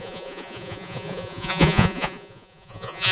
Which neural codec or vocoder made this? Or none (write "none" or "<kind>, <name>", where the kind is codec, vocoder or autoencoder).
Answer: vocoder, Vocos